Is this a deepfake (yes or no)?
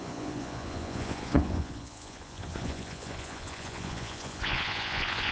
yes